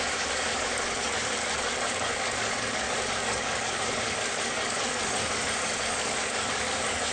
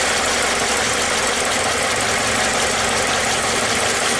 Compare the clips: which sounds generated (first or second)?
first